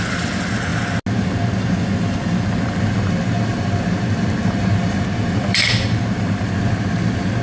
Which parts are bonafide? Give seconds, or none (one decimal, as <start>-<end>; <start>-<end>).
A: 0.0-7.4